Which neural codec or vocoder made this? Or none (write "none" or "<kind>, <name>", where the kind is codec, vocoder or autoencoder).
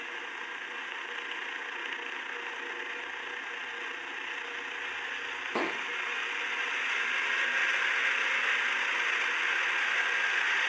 none